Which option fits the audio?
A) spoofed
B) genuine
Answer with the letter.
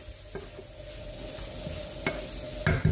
B